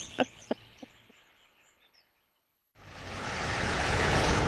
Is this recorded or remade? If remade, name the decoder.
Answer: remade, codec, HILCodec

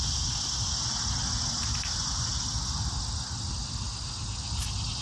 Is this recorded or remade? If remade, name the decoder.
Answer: recorded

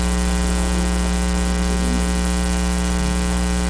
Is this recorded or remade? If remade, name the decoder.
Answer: recorded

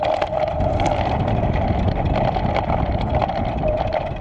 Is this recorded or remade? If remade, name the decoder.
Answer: recorded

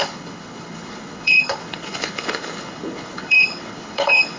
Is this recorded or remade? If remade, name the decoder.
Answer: remade, codec, HILCodec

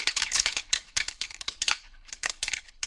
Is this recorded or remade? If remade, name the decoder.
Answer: remade, codec, HILCodec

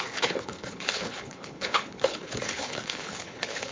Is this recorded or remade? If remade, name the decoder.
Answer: remade, codec, HILCodec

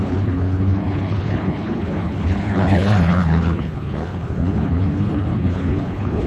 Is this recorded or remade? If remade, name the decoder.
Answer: remade, codec, HILCodec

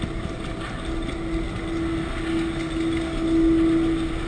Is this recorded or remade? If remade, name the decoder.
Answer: recorded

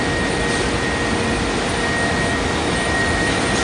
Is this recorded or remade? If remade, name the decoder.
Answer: recorded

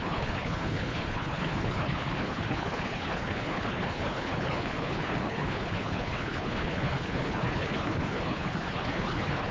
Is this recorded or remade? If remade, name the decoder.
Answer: remade, codec, HILCodec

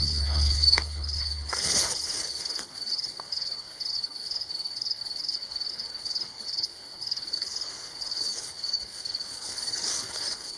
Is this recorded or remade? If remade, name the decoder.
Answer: remade, codec, HILCodec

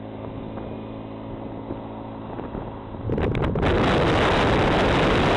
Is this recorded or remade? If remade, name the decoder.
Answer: recorded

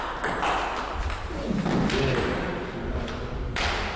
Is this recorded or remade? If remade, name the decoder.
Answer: recorded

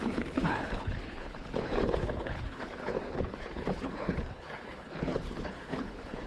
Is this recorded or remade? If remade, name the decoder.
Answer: remade, codec, HILCodec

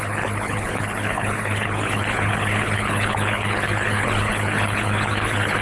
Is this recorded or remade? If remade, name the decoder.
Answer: remade, codec, HILCodec